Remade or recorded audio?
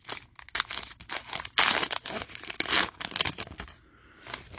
recorded